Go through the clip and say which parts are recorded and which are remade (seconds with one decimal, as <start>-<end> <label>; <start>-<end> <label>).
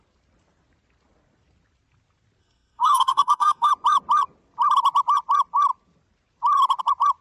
0.0-2.4 recorded; 2.4-3.7 remade; 3.7-7.2 recorded